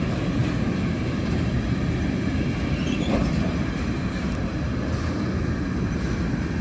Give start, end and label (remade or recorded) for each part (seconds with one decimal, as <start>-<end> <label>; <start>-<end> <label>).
0.0-3.2 recorded; 3.2-3.9 remade; 3.9-6.6 recorded